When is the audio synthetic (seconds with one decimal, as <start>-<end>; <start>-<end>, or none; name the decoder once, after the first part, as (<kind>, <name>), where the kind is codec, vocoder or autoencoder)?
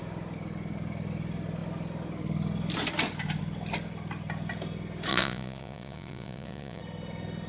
5.1-6.8 (vocoder, Vocos)